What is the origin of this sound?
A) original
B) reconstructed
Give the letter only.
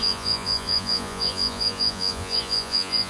B